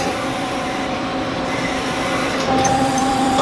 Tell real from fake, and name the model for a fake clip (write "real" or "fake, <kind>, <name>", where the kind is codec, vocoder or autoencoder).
fake, vocoder, BigVGAN v2